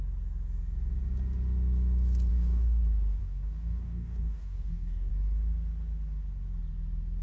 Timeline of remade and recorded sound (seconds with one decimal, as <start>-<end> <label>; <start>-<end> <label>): 0.0-2.3 recorded; 2.3-2.8 remade; 2.8-3.2 recorded; 3.2-5.1 remade; 5.1-7.2 recorded